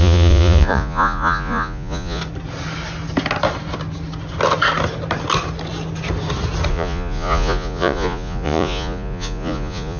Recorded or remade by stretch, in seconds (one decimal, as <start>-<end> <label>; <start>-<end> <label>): 0.0-2.2 remade; 2.2-6.7 recorded; 6.7-10.0 remade